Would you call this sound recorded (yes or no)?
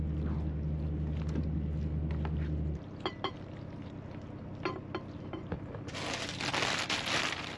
yes